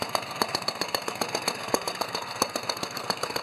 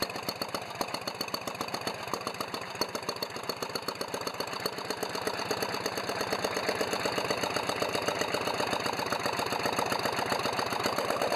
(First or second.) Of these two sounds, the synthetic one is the first